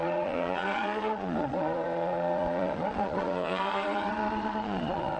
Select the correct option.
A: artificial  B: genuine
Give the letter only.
A